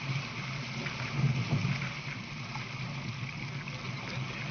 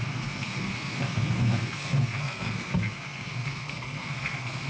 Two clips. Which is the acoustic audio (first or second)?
first